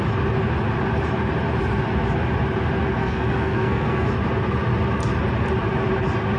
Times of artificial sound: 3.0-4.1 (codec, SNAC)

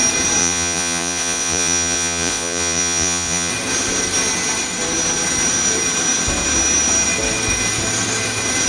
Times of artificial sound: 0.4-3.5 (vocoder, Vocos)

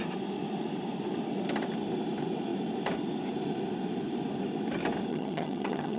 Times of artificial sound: 5.1-6.0 (vocoder, HiFi-GAN)

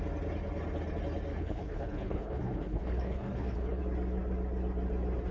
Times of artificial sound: 1.3-3.8 (codec, HILCodec)

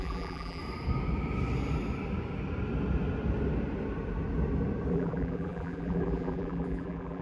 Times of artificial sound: 0.0-0.6 (vocoder, BigVGAN v2); 4.9-7.2

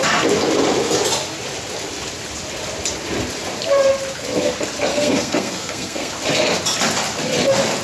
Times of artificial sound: 4.9-6.1 (codec, SNAC)

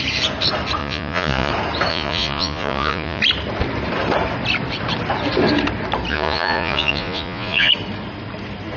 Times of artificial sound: 0.8-1.5 (vocoder, Vocos); 1.9-3.2; 6.1-7.7